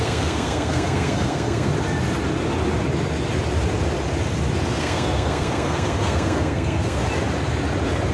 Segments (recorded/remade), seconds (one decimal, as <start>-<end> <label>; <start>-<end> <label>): 0.0-1.7 remade; 1.7-4.8 recorded; 4.8-7.0 remade; 7.0-8.1 recorded